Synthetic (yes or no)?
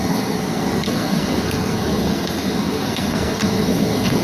yes